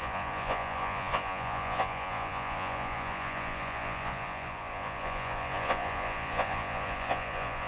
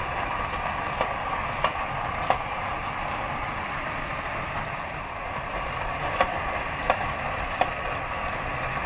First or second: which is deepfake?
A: first